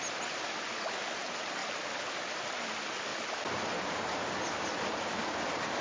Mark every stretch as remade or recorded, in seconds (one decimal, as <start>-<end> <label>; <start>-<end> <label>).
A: 0.0-5.8 recorded